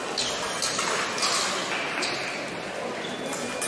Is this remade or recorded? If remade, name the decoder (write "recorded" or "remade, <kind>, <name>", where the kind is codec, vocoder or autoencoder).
recorded